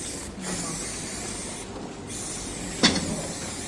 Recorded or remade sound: recorded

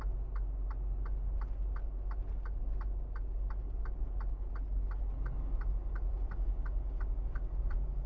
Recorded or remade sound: recorded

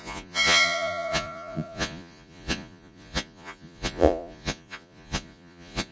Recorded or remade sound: remade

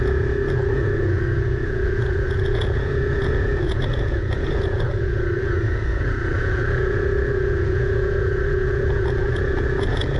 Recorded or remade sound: remade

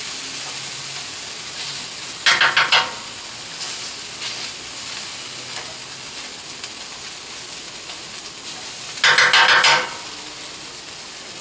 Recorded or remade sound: recorded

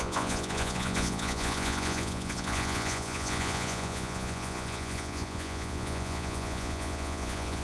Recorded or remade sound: remade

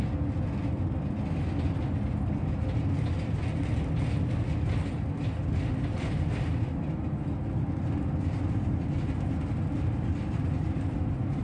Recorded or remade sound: recorded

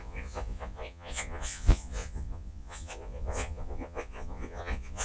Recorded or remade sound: remade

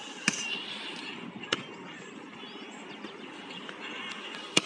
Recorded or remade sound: recorded